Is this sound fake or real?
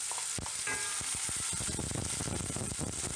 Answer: real